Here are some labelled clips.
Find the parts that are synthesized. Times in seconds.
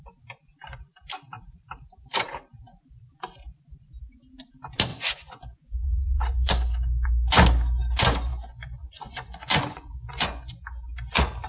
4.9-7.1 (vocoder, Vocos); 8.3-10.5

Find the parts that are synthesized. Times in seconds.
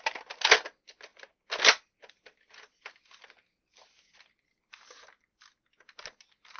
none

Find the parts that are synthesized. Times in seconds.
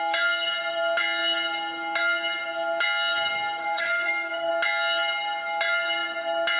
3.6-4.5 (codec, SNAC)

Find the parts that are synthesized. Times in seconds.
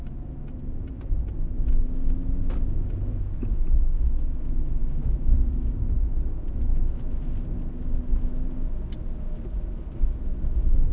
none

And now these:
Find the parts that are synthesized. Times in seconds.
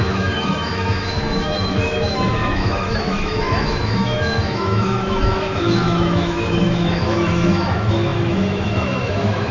0.0-9.5 (autoencoder, DAC-VAE)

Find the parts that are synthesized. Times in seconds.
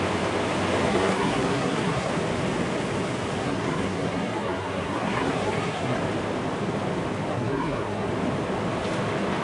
0.9-2.1 (codec, SNAC); 3.4-6.0; 7.3-8.1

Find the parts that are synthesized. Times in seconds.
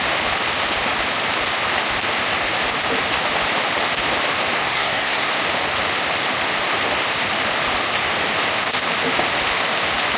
4.6-5.3 (codec, SNAC)